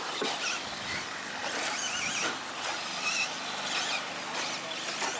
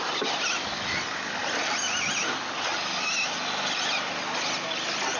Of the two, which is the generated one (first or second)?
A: first